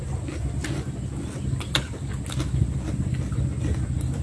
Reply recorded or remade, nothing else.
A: recorded